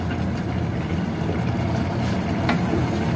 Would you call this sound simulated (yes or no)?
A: no